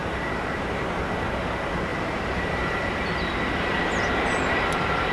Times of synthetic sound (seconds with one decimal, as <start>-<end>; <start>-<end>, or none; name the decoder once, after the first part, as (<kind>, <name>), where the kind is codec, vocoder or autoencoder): 0.0-1.0 (vocoder, BigVGAN v2); 1.9-5.1